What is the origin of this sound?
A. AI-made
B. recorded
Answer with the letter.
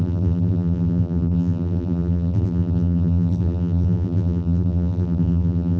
A